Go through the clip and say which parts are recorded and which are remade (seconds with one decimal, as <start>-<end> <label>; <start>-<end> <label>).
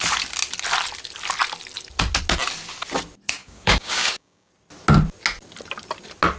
0.0-3.4 recorded; 3.4-4.5 remade; 4.5-6.4 recorded